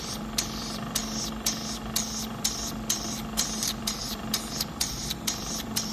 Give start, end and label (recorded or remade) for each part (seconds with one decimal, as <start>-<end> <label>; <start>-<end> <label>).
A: 0.0-1.0 remade; 1.0-2.3 recorded; 2.3-5.9 remade